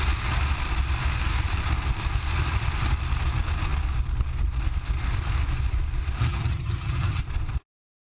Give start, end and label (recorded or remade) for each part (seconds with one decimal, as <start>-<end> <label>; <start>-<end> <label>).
0.0-6.2 recorded; 6.2-7.2 remade; 7.2-8.1 recorded